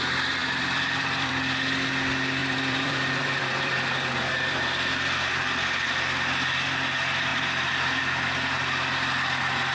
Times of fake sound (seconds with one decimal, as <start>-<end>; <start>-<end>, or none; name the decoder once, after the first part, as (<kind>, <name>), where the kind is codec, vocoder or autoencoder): 0.4-1.3 (vocoder, BigVGAN v2); 2.4-5.3